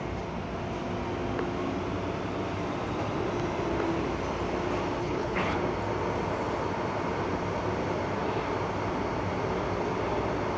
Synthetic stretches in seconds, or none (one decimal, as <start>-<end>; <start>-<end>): 5.0-5.6